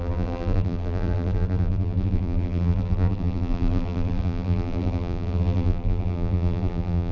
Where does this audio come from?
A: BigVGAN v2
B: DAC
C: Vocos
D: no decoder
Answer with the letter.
A